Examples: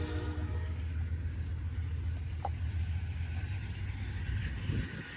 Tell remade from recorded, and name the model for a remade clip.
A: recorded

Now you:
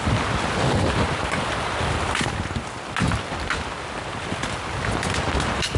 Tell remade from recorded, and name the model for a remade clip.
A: recorded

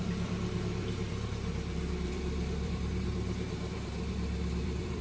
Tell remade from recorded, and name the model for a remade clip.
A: remade, vocoder, BigVGAN v2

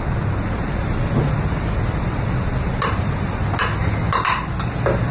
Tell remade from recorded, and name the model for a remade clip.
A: recorded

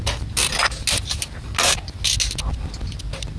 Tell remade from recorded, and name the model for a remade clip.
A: recorded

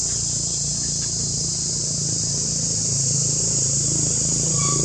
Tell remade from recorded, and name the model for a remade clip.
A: remade, vocoder, BigVGAN v2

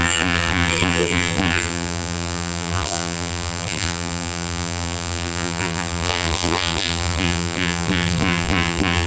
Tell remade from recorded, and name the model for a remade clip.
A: remade, vocoder, BigVGAN v2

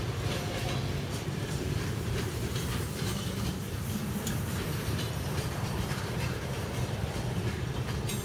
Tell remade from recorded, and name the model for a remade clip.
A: remade, vocoder, BigVGAN v2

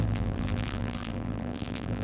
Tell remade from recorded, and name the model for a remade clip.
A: remade, vocoder, BigVGAN v2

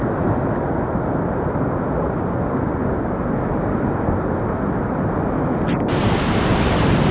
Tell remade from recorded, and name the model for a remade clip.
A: recorded